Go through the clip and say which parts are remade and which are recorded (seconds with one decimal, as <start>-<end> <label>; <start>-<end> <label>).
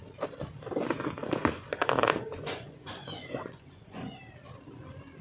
0.0-1.2 recorded; 1.2-4.2 remade; 4.2-5.2 recorded